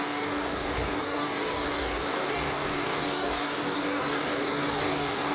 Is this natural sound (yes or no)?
no